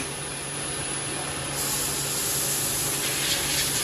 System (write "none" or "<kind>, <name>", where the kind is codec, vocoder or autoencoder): none